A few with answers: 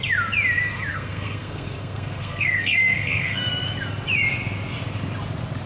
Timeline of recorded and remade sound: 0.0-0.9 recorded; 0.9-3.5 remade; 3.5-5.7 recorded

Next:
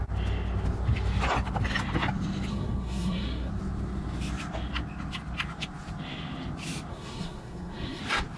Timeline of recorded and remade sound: 0.0-2.5 recorded; 2.5-3.5 remade; 3.5-6.9 recorded; 6.9-8.0 remade; 8.0-8.4 recorded

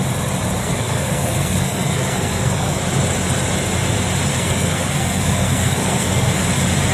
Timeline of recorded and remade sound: 0.0-0.6 recorded; 0.6-2.8 remade; 2.8-4.3 recorded; 4.3-6.4 remade; 6.4-6.9 recorded

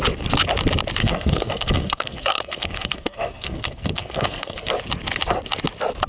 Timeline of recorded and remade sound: 0.0-1.0 recorded; 1.0-4.7 remade; 4.7-6.1 recorded

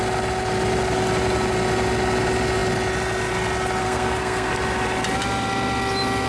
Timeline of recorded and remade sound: 0.0-3.8 recorded; 3.8-4.5 remade; 4.5-6.3 recorded

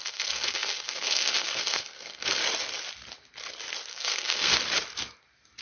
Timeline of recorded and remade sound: 0.0-2.4 remade; 2.4-3.9 recorded; 3.9-4.5 remade; 4.5-5.6 recorded